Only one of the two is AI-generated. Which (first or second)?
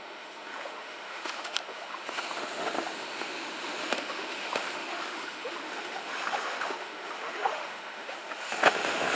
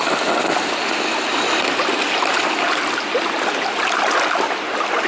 first